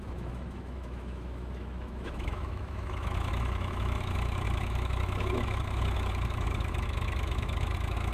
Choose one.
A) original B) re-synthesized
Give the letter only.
B